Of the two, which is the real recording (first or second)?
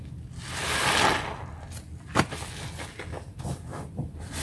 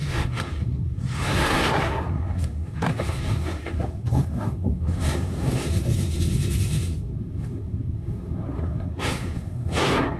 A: first